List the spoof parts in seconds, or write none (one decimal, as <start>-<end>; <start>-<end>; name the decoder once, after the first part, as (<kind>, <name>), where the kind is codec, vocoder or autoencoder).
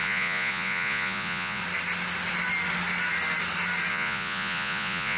0.0-1.6 (vocoder, Vocos); 3.9-5.2